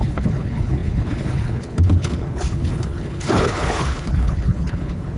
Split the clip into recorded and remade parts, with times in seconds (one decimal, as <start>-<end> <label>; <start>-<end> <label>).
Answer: 0.0-5.2 remade